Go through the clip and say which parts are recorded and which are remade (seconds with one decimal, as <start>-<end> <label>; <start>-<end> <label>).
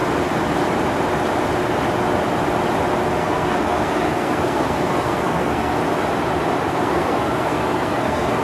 0.0-3.2 recorded; 3.2-5.8 remade; 5.8-6.7 recorded; 6.7-8.4 remade